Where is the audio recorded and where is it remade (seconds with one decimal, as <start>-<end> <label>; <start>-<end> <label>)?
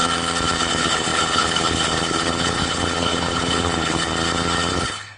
0.0-0.7 recorded; 0.7-4.1 remade; 4.1-4.7 recorded; 4.7-5.2 remade